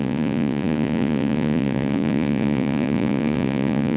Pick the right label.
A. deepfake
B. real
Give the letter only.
A